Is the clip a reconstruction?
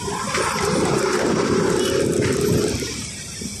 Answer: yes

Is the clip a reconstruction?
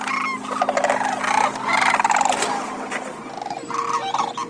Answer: no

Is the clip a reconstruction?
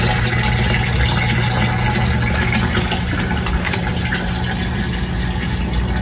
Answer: no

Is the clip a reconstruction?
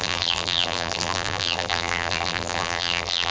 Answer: yes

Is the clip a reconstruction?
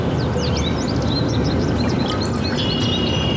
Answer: no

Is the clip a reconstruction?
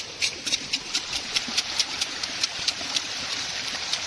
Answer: yes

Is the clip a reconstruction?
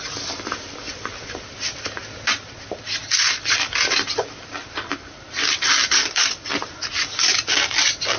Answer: yes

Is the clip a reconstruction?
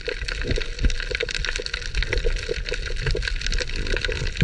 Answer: no